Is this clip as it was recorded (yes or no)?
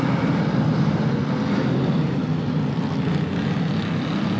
no